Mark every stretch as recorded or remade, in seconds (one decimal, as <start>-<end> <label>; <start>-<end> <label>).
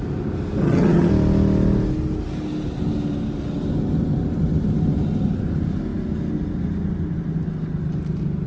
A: 0.0-0.6 recorded; 0.6-1.1 remade; 1.1-8.5 recorded